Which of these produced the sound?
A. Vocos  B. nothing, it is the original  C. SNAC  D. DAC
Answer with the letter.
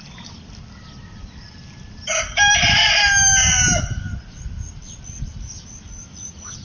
B